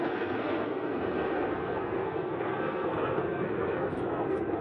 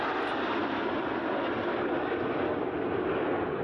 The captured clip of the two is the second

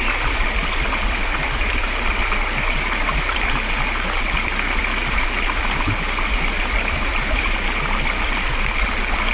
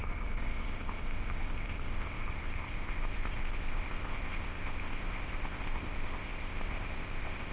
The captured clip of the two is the first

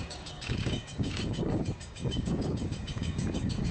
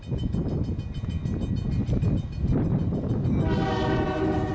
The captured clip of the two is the second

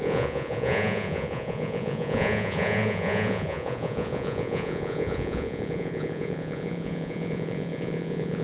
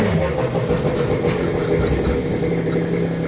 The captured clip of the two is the second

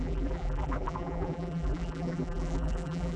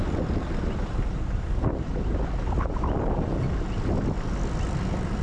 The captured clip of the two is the second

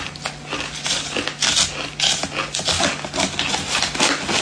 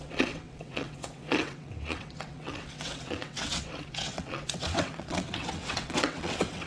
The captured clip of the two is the first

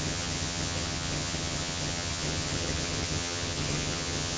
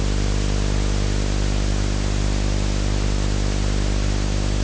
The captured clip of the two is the second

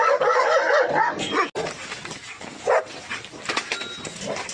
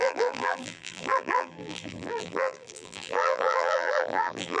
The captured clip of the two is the first